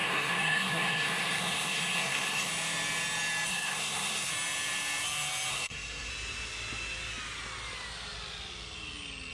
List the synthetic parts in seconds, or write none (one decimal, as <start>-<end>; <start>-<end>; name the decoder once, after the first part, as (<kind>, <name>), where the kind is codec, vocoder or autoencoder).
0.0-2.5 (codec, SNAC); 3.5-4.3; 5.5-6.1